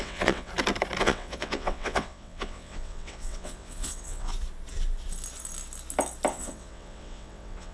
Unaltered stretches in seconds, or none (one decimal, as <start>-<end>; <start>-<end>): 0.5-1.0; 4.3-6.3